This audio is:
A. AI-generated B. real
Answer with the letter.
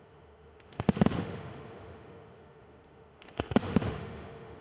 A